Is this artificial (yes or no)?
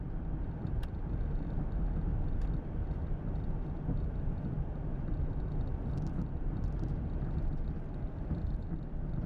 no